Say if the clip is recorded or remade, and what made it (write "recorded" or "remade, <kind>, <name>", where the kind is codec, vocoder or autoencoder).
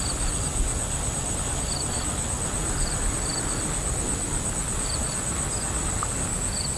recorded